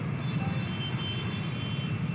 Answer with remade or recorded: recorded